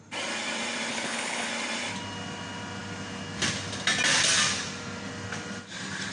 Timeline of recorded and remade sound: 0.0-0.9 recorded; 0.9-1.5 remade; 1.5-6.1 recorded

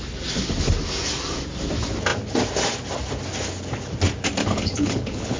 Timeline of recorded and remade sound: 0.0-4.4 recorded; 4.4-5.4 remade